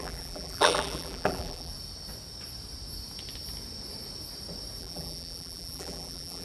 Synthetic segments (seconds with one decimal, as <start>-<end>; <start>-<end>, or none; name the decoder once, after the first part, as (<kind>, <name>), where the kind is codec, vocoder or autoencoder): 0.0-1.7 (vocoder, BigVGAN v2); 4.8-6.4